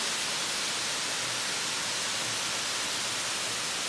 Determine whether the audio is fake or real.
real